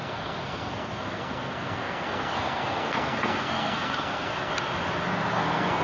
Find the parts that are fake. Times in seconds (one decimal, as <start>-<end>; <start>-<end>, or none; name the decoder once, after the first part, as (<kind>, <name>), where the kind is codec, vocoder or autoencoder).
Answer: 0.0-4.5 (codec, SNAC); 5.3-5.8